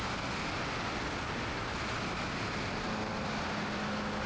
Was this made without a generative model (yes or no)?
yes